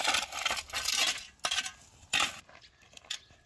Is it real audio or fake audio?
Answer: real